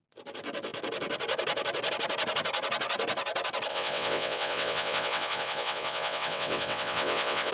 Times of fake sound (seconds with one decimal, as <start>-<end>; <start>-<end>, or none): 3.7-7.5